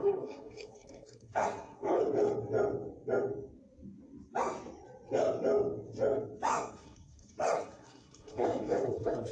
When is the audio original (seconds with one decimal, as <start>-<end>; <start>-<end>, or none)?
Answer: 2.0-6.5